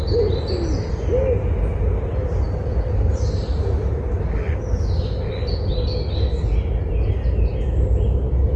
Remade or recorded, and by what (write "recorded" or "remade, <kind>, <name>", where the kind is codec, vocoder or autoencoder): recorded